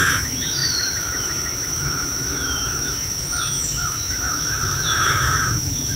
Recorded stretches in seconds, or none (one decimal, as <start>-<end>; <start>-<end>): none